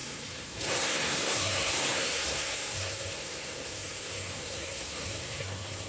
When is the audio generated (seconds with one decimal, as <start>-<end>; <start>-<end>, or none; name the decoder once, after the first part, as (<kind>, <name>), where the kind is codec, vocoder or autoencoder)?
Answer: 0.0-5.9 (codec, SNAC)